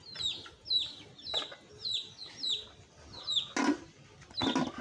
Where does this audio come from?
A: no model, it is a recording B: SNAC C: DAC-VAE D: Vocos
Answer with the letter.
A